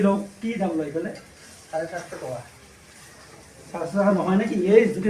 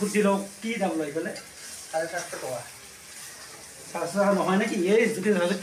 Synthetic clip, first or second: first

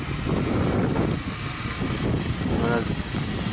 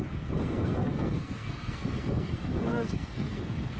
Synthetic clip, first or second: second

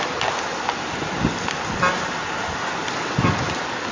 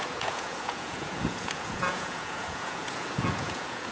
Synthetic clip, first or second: second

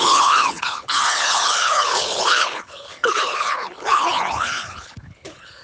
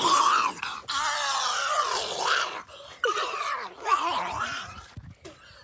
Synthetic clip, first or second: first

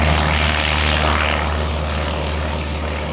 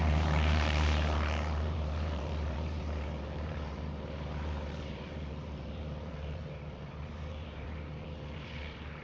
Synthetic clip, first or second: second